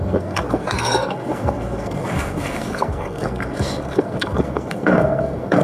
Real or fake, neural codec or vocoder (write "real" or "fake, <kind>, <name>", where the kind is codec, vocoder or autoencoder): fake, codec, SNAC